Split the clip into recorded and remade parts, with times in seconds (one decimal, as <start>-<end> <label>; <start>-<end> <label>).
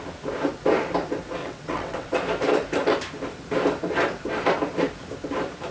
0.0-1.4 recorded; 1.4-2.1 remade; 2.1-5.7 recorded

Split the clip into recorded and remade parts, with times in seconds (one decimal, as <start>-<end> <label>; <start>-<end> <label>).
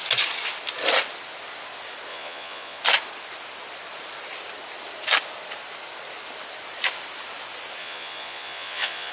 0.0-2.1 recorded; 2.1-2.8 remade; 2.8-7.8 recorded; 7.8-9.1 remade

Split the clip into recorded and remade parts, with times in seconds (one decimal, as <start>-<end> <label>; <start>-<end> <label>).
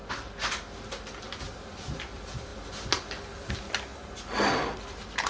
0.0-5.3 recorded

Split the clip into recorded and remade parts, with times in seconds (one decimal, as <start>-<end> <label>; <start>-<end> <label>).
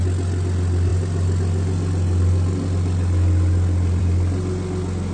0.0-5.1 recorded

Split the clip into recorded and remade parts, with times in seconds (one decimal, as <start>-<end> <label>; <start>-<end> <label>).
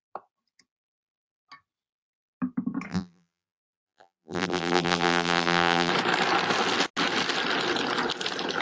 0.0-2.9 recorded; 2.9-5.9 remade; 5.9-8.6 recorded